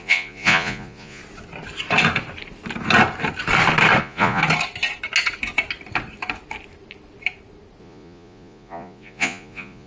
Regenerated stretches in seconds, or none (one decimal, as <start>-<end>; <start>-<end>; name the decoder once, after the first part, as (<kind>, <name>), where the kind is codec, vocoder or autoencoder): 0.0-1.2 (vocoder, Vocos); 4.0-4.4; 7.8-9.9